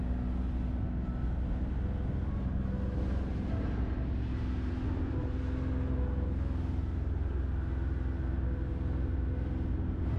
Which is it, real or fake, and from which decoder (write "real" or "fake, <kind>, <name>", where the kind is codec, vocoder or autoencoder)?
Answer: real